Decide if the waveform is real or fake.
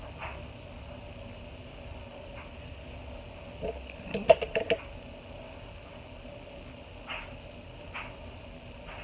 real